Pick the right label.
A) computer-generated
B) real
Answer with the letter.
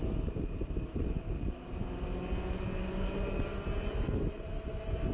B